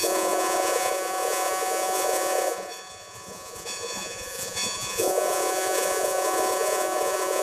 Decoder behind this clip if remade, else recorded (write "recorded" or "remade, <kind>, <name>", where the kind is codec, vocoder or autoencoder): remade, vocoder, Vocos